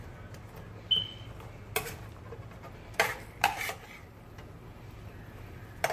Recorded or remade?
recorded